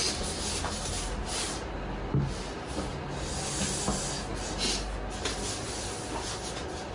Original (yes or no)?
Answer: yes